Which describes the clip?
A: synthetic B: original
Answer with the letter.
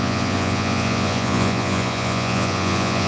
A